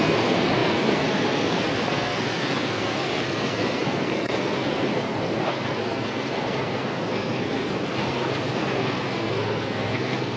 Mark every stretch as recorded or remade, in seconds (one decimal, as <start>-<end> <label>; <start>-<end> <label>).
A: 0.0-10.4 remade